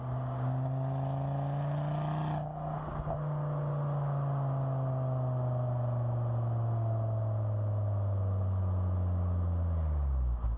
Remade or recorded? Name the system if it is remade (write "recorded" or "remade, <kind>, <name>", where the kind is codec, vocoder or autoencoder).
recorded